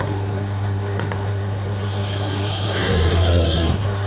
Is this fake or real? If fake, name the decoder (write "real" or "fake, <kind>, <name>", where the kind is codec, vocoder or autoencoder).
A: fake, codec, SNAC